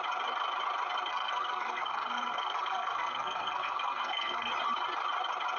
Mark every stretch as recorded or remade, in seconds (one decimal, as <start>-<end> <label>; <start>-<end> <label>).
0.0-1.1 recorded; 1.1-4.5 remade; 4.5-5.6 recorded